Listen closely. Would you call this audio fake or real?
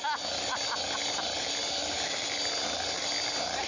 real